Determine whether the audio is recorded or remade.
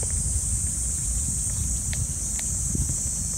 recorded